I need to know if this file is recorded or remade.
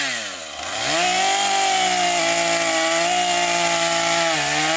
recorded